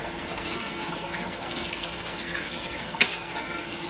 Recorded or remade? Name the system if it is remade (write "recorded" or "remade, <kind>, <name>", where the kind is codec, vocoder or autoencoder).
remade, codec, SNAC